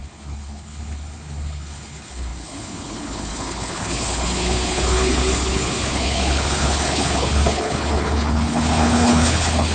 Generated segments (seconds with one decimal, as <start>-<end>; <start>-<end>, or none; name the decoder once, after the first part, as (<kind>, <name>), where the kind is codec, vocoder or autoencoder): 0.0-9.7 (codec, HILCodec)